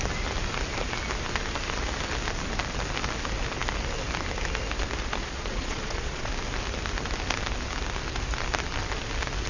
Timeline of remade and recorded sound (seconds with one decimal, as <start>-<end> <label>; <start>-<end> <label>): 0.0-5.2 recorded; 5.2-6.3 remade; 6.3-9.5 recorded